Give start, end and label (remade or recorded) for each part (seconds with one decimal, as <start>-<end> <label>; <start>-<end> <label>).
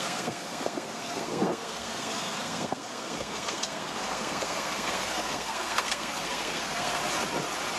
0.0-7.0 remade; 7.0-7.8 recorded